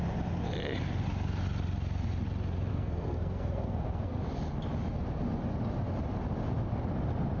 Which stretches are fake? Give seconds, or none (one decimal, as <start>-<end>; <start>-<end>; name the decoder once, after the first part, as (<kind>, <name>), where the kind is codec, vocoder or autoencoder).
2.7-4.2 (codec, SNAC)